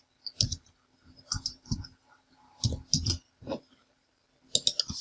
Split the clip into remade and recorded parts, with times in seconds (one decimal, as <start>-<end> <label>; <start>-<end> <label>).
0.0-0.5 recorded; 0.5-2.6 remade; 2.6-3.5 recorded; 3.5-4.1 remade; 4.1-5.0 recorded